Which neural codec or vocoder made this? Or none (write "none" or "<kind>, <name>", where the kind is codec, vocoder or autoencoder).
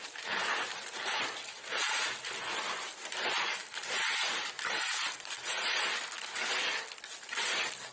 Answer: none